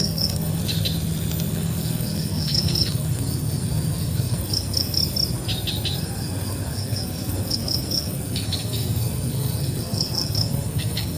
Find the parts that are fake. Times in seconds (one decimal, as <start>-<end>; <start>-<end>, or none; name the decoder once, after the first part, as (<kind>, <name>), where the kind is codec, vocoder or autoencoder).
0.0-0.6 (codec, SNAC); 1.5-5.0; 6.0-11.2